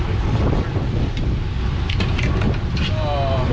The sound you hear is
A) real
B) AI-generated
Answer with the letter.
A